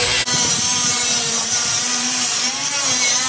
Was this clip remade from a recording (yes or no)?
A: no